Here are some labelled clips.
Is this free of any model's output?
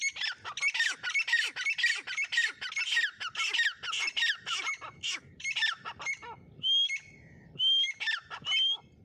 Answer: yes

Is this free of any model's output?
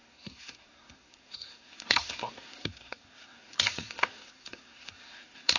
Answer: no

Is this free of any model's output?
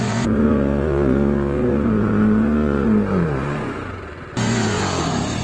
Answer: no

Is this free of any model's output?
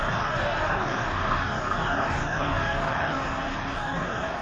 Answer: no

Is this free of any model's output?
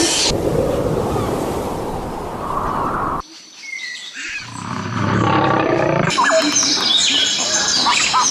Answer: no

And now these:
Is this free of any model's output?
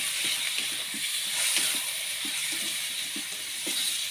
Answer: no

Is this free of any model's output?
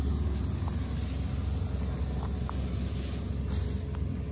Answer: yes